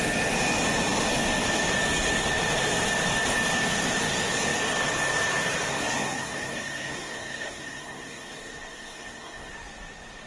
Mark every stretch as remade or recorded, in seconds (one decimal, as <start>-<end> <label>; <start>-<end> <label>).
0.0-5.7 recorded; 5.7-9.5 remade; 9.5-10.3 recorded